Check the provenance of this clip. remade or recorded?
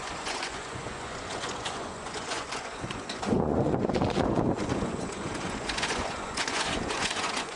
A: remade